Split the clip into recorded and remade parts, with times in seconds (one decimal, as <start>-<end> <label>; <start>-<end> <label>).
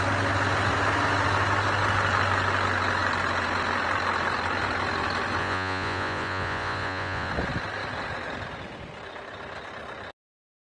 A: 0.0-5.4 recorded; 5.4-7.3 remade; 7.3-10.6 recorded